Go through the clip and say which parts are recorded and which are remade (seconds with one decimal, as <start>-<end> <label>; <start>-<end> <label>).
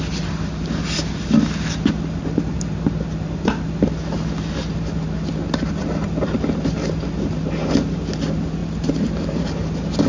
0.0-8.6 recorded; 8.6-9.4 remade; 9.4-10.1 recorded